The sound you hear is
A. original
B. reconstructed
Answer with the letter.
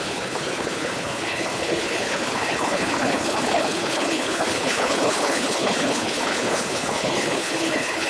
B